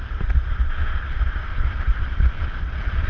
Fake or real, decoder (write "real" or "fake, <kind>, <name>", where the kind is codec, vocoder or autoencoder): real